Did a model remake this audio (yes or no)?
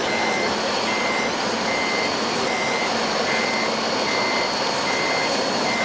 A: no